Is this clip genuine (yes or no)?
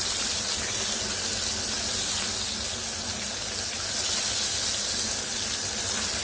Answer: yes